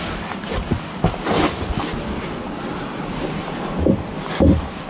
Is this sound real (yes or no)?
yes